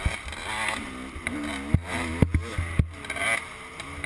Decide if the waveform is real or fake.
real